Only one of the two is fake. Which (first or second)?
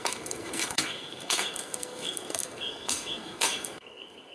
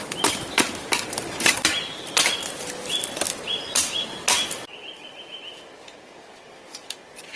first